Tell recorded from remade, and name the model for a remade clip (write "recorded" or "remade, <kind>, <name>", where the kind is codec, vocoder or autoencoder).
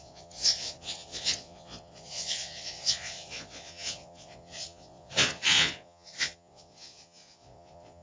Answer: remade, vocoder, Vocos